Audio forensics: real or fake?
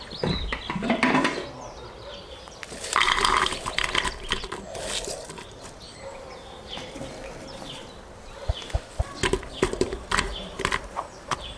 fake